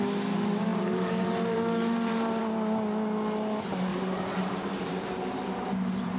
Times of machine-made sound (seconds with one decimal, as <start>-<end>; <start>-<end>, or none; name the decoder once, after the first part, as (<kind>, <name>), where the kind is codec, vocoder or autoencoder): 0.7-2.4 (vocoder, BigVGAN v2); 3.9-6.2